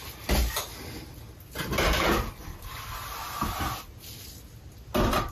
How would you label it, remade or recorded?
recorded